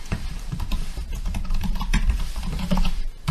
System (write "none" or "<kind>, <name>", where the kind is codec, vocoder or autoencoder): vocoder, BigVGAN v2